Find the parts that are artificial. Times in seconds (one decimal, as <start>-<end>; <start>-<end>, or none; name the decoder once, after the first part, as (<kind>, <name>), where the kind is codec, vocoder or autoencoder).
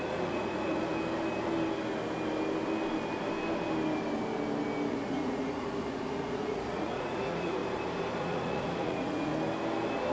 0.0-0.9 (vocoder, Vocos); 4.9-7.6; 8.2-9.3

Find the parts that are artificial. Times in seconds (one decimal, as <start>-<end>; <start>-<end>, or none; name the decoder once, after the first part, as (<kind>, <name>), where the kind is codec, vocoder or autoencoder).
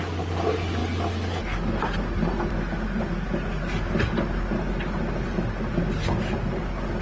none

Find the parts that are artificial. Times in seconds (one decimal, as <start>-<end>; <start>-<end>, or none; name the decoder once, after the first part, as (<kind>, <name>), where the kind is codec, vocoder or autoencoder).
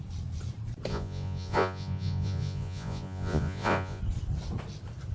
0.9-4.0 (vocoder, Vocos)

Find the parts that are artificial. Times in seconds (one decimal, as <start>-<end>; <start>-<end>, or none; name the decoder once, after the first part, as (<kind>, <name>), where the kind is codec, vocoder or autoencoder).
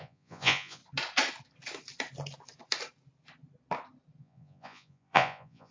0.0-0.8 (vocoder, Vocos); 4.2-5.7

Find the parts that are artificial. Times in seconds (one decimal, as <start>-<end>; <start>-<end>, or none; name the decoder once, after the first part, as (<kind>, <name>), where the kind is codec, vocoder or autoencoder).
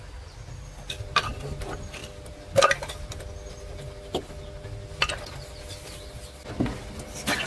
none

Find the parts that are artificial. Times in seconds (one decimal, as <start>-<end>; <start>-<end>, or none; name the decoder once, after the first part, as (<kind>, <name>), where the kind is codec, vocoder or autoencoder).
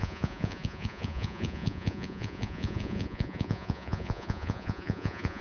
0.0-5.4 (vocoder, Vocos)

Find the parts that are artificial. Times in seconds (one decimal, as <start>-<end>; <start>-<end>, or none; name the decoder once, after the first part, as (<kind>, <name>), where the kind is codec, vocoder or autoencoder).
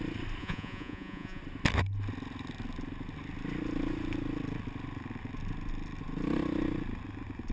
0.4-1.4 (vocoder, Vocos)